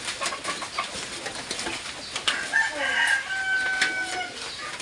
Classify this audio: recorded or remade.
recorded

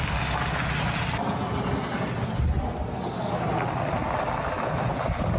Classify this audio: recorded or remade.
recorded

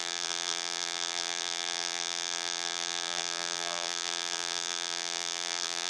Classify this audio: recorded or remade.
remade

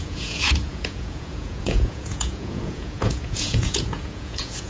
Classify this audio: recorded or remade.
remade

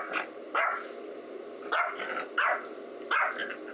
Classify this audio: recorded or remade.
recorded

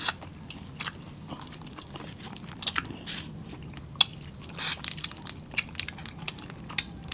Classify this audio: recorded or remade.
recorded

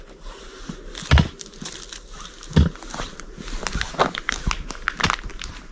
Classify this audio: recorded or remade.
recorded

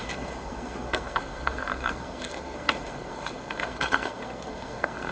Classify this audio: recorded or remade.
remade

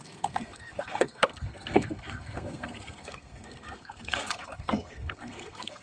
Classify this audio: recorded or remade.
remade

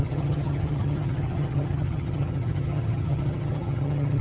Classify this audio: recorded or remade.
remade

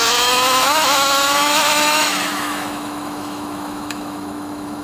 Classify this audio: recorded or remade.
remade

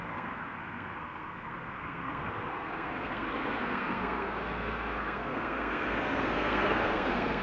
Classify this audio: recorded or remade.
remade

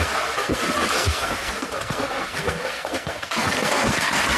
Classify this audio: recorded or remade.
remade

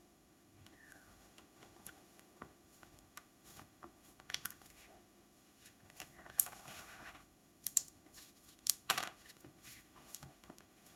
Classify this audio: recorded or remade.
remade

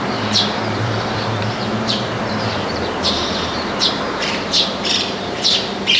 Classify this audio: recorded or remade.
remade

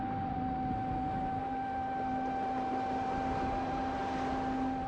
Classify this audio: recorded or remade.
recorded